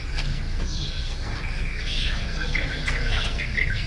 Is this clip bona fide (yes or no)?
no